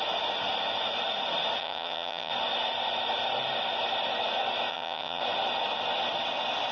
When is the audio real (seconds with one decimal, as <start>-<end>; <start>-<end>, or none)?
0.0-1.6; 2.3-4.7; 5.2-6.7